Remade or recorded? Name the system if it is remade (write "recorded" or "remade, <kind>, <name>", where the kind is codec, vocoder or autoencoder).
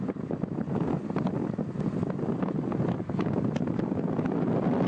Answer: recorded